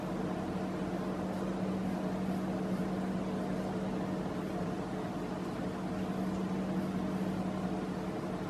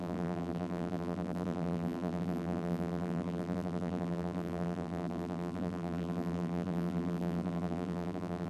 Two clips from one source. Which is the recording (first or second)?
first